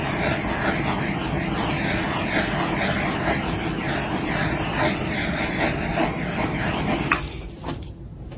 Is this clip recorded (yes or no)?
no